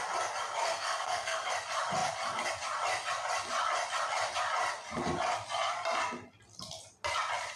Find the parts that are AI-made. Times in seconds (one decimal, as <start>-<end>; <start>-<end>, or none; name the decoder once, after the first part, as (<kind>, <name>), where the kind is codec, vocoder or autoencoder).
0.6-1.5 (codec, SNAC)